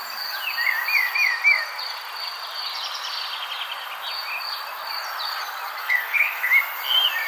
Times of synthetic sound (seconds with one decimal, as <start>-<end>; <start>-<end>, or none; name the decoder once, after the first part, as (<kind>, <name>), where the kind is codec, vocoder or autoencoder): 5.8-6.5 (codec, SNAC)